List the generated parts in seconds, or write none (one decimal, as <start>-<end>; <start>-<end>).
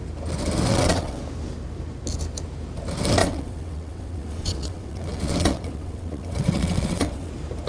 0.7-1.2; 3.2-7.3